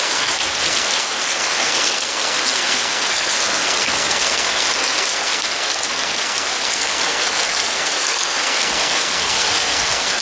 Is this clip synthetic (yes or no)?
yes